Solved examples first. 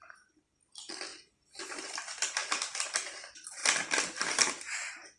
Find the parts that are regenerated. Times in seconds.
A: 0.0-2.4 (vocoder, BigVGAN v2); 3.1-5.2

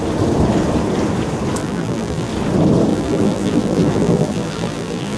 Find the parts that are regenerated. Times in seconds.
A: 1.6-2.3 (vocoder, BigVGAN v2); 2.9-5.2

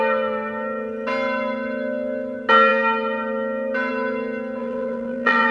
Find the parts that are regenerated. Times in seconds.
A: 4.6-5.5 (vocoder, BigVGAN v2)

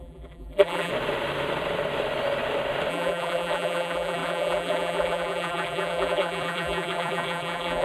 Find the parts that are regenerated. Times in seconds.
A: 0.0-0.9 (vocoder, BigVGAN v2); 2.9-7.8

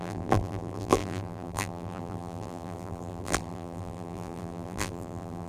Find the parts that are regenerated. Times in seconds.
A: 0.0-5.5 (vocoder, BigVGAN v2)